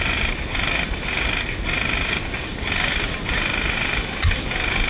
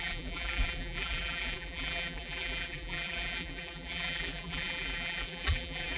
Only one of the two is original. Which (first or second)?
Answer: first